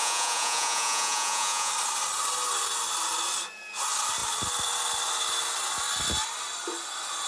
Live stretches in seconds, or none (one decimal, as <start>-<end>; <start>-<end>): 1.7-7.3